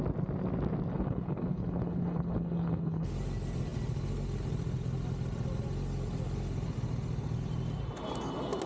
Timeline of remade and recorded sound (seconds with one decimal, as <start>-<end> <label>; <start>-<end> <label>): 0.0-0.9 recorded; 0.9-3.1 remade; 3.1-8.7 recorded